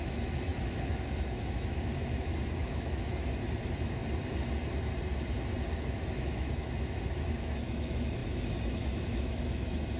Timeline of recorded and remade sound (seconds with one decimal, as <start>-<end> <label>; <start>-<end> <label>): 0.0-4.0 remade; 4.0-5.7 recorded; 5.7-10.0 remade